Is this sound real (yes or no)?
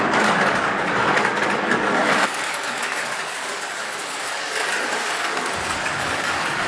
no